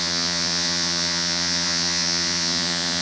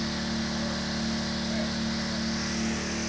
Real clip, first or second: second